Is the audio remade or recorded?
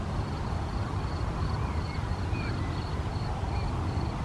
recorded